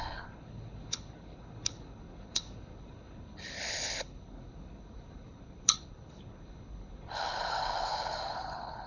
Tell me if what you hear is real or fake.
fake